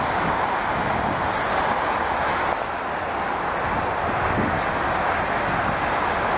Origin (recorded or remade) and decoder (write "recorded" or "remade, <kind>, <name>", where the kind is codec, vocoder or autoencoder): recorded